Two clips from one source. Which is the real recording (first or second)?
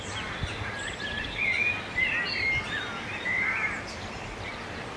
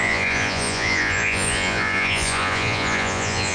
first